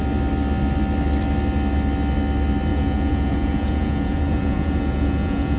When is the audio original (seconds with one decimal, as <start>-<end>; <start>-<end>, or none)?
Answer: 0.0-2.7